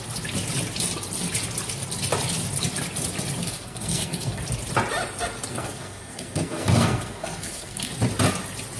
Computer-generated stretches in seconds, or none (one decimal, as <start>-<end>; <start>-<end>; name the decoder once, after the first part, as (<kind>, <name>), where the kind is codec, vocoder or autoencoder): 3.4-4.4 (codec, SNAC); 5.5-7.9